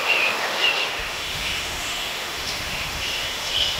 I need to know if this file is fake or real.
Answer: fake